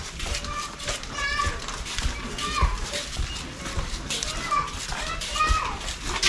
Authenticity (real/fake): real